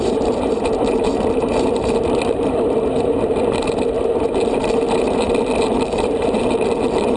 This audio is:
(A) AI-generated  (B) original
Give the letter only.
A